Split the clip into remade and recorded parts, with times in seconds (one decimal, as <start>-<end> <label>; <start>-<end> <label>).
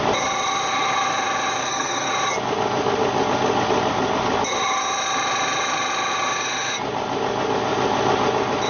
0.0-1.6 recorded; 1.6-2.1 remade; 2.1-8.7 recorded